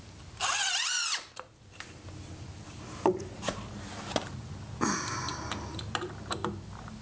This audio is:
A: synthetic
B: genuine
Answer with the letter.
B